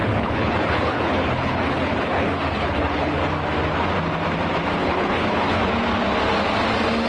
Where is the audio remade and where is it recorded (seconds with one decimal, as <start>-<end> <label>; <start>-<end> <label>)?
0.0-3.2 remade; 3.2-4.8 recorded; 4.8-5.6 remade; 5.6-7.1 recorded